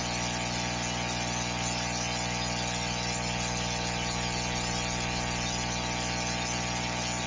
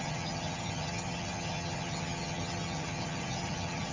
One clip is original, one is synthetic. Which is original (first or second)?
first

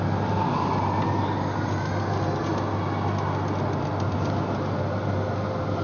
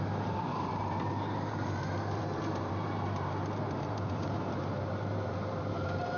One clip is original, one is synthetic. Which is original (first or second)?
first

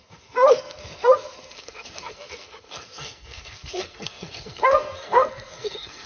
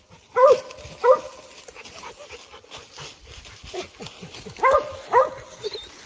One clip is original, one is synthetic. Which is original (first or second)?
second